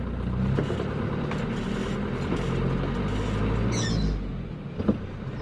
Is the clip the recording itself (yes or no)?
yes